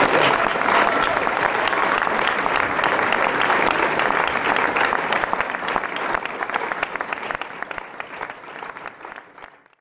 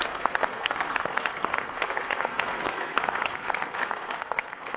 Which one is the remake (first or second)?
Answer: second